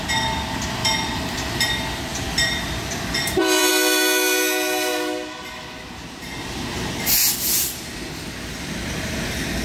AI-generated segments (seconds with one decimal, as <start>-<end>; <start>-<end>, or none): 2.1-3.7